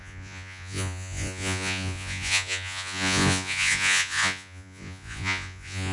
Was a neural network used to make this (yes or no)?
yes